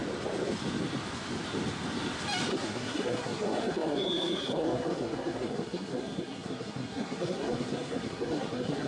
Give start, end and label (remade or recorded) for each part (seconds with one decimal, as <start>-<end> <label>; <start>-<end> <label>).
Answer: 0.0-2.5 recorded; 2.5-8.9 remade